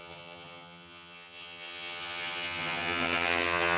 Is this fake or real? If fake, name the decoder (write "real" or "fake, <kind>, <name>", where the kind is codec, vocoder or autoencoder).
fake, vocoder, HiFi-GAN